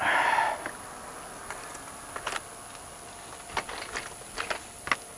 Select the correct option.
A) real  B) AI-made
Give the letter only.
A